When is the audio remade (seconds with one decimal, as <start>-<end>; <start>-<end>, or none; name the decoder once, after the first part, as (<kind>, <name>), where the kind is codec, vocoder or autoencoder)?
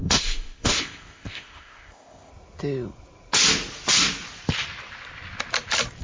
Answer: 0.0-2.3 (codec, ZipCodec)